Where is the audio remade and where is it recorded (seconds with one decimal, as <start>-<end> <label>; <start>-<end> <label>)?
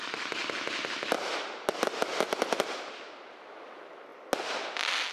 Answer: 0.0-5.1 recorded